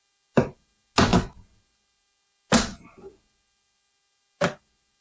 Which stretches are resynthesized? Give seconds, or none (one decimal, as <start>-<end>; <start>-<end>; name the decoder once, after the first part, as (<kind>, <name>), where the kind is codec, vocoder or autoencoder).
none